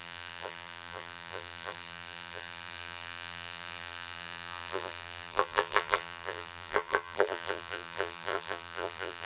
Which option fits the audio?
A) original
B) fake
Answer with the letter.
B